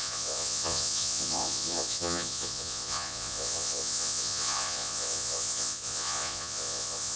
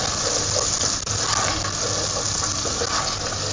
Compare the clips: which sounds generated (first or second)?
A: first